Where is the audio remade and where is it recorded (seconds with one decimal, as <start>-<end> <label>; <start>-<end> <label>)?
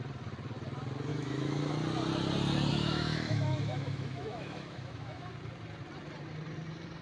0.0-1.1 recorded; 1.1-1.7 remade; 1.7-2.7 recorded; 2.7-5.3 remade; 5.3-7.0 recorded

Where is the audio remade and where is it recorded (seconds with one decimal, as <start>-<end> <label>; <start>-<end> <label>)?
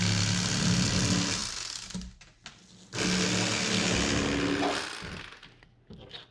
0.0-6.3 recorded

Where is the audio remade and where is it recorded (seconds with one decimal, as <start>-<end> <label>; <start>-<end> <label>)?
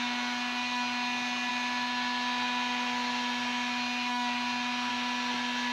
0.0-5.7 recorded